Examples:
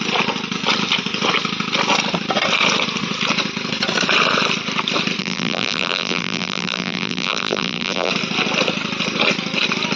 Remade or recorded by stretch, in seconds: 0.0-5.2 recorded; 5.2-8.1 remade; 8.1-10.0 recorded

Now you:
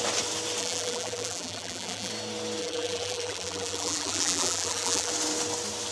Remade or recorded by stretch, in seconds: 0.0-0.6 recorded; 0.6-2.1 remade; 2.1-2.6 recorded; 2.6-5.1 remade; 5.1-5.9 recorded

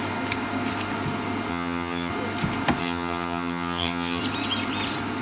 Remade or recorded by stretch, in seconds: 0.0-1.5 recorded; 1.5-2.1 remade; 2.1-2.8 recorded; 2.8-4.2 remade; 4.2-5.2 recorded

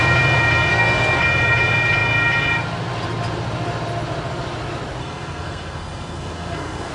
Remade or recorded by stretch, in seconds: 0.0-0.7 recorded; 0.7-1.2 remade; 1.2-5.0 recorded; 5.0-6.9 remade